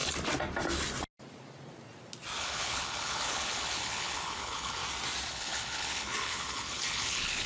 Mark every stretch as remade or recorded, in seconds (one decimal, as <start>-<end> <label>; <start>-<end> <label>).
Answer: 0.0-2.4 recorded; 2.4-4.8 remade; 4.8-5.3 recorded; 5.3-7.5 remade

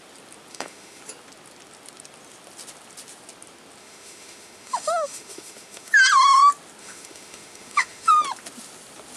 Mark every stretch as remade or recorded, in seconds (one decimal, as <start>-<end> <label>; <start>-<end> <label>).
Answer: 0.0-0.5 recorded; 0.5-1.0 remade; 1.0-3.8 recorded; 3.8-5.9 remade; 5.9-6.8 recorded; 6.8-8.1 remade; 8.1-9.2 recorded

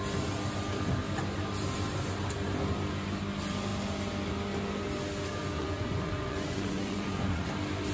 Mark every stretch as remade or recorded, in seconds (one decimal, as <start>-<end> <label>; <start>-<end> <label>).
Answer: 0.0-5.6 recorded; 5.6-7.5 remade; 7.5-7.9 recorded

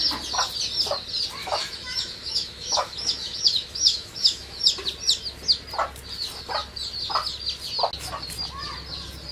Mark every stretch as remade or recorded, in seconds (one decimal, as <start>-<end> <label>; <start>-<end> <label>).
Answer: 0.0-1.4 recorded; 1.4-4.6 remade; 4.6-9.3 recorded

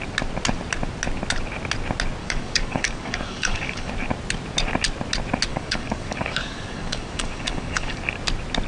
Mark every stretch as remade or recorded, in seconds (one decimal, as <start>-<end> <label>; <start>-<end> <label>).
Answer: 0.0-2.2 recorded; 2.2-3.9 remade; 3.9-5.5 recorded; 5.5-8.0 remade; 8.0-8.7 recorded

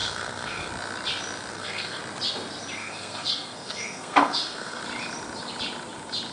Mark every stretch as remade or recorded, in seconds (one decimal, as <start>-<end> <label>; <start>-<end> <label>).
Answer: 0.0-0.7 remade; 0.7-1.5 recorded; 1.5-2.0 remade; 2.0-2.8 recorded; 2.8-4.8 remade; 4.8-6.3 recorded